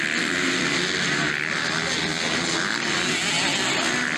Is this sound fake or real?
real